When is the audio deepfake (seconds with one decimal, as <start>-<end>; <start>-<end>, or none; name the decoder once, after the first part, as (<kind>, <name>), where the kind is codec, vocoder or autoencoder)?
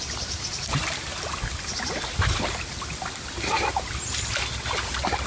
none